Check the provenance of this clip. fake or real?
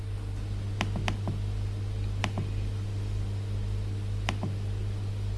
real